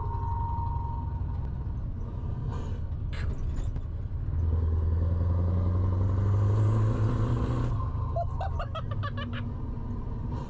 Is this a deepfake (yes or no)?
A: no